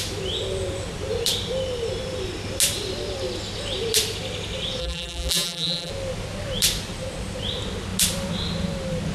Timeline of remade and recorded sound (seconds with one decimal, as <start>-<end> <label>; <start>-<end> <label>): 0.0-4.8 recorded; 4.8-5.9 remade; 5.9-9.1 recorded